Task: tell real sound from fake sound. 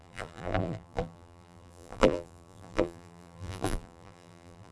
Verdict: fake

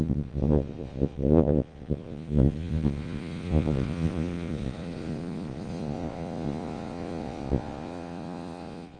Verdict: fake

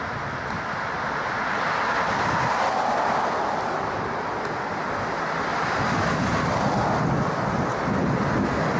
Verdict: real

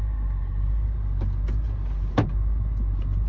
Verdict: real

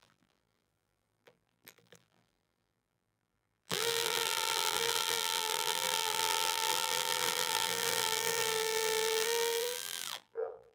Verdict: fake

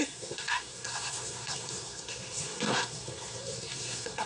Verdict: fake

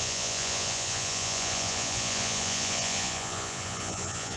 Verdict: fake